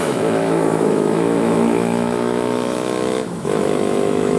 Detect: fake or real fake